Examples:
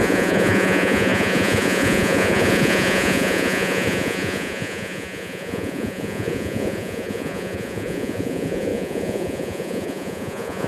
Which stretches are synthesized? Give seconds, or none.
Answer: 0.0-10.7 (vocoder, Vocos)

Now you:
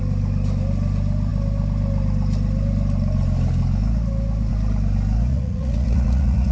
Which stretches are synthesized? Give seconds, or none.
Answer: 5.3-6.5 (vocoder, Vocos)

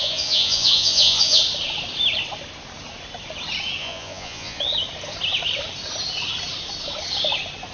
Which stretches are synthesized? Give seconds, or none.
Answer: 0.0-1.4 (vocoder, Vocos); 3.8-4.6

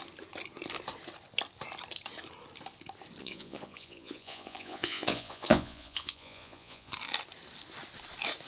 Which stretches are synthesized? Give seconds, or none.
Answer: 3.2-6.9 (vocoder, Vocos)

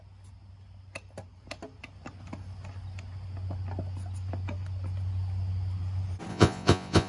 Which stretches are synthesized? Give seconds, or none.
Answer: 6.3-7.1 (vocoder, Vocos)